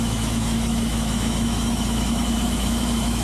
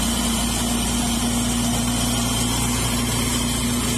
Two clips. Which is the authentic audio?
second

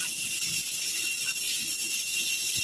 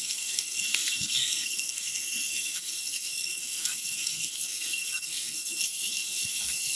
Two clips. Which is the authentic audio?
first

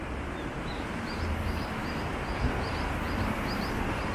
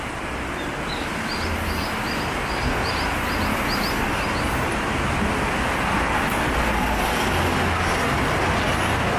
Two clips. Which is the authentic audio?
second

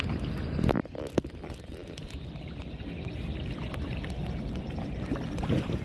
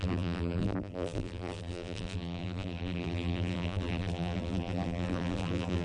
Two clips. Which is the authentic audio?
first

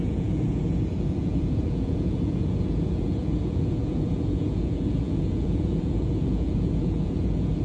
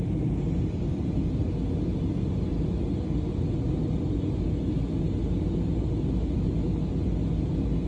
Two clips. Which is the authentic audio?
second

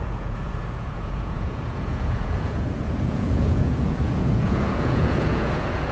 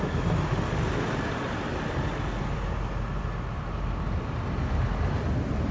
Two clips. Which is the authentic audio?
second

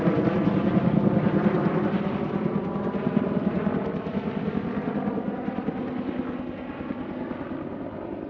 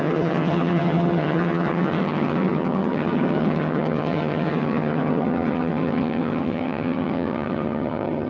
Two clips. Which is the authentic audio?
first